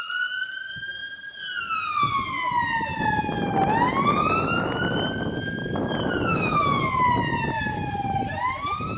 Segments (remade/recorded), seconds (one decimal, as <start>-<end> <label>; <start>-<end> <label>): 0.0-6.3 recorded; 6.3-6.8 remade; 6.8-9.0 recorded